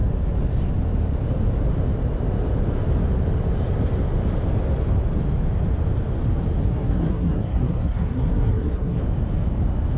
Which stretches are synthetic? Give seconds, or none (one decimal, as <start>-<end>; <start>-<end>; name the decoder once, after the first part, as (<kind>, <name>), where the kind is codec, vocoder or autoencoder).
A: 6.6-9.0 (codec, SNAC)